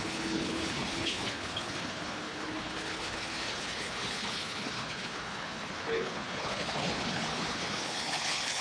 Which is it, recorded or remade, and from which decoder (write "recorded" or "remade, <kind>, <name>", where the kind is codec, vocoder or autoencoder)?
remade, codec, HILCodec